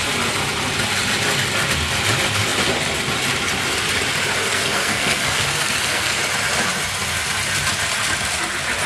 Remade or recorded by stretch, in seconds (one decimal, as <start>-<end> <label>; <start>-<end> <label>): 0.0-4.5 recorded; 4.5-6.2 remade; 6.2-8.9 recorded

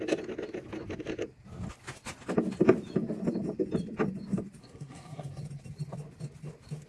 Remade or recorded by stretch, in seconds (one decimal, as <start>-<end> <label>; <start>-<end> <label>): 0.0-4.6 recorded; 4.6-5.4 remade; 5.4-6.9 recorded